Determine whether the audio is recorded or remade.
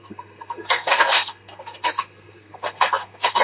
remade